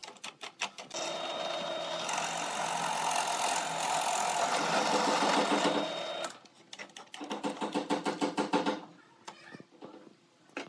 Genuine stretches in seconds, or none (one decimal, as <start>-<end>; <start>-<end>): 0.0-10.7